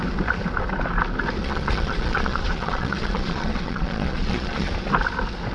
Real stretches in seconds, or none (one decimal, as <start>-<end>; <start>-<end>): 0.0-1.4; 4.7-5.5